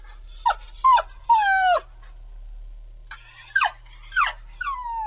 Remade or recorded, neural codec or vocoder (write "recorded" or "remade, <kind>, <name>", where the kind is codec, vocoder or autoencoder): recorded